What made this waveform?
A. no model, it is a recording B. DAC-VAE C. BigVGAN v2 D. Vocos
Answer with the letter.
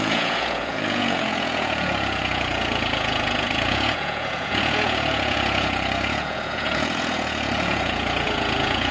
D